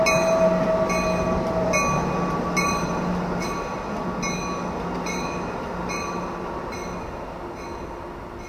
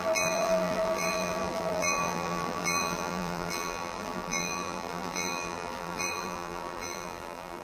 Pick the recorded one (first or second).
first